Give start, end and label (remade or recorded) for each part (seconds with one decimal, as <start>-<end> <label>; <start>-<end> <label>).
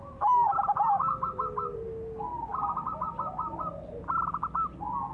0.0-5.1 recorded